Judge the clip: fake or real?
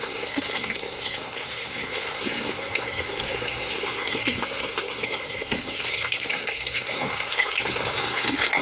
fake